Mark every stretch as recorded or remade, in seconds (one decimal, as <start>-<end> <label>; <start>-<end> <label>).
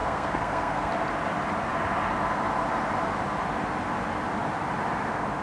0.0-0.9 remade; 0.9-5.4 recorded